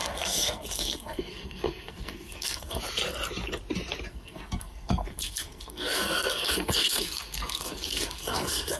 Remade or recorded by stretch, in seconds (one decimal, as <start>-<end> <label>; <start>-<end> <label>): 0.0-2.8 remade; 2.8-4.1 recorded; 4.1-8.8 remade